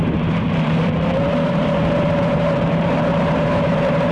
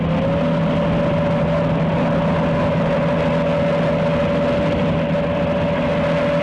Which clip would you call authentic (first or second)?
second